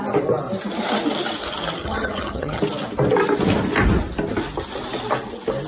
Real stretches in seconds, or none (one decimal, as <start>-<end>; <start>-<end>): 0.0-1.8; 2.6-5.7